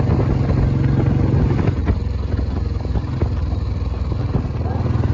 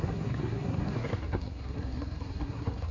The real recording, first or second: first